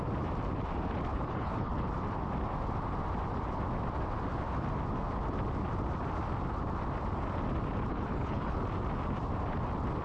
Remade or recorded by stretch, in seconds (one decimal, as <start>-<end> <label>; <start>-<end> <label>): 0.0-1.1 recorded; 1.1-1.9 remade; 1.9-7.9 recorded; 7.9-8.6 remade; 8.6-10.0 recorded